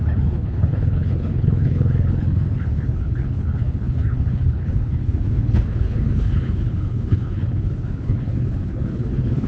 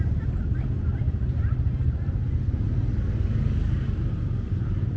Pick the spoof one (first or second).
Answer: first